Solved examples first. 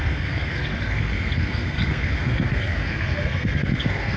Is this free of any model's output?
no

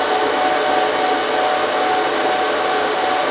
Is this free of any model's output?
yes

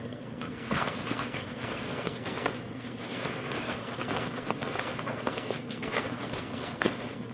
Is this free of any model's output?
no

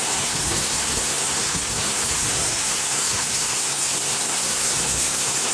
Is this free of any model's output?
no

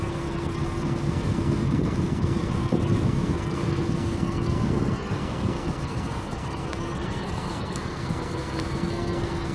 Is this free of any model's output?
no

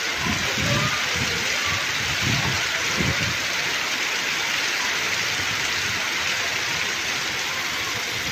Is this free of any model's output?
yes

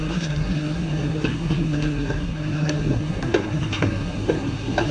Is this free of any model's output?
no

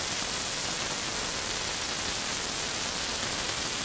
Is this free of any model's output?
yes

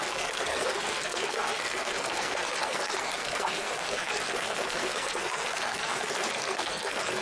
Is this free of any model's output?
no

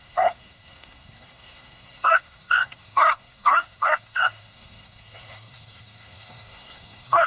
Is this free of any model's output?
no